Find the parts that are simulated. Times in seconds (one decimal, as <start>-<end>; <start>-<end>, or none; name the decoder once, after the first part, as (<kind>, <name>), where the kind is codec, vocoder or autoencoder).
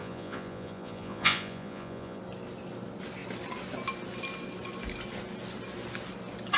0.0-2.2 (vocoder, Vocos)